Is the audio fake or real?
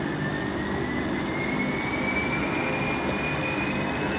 real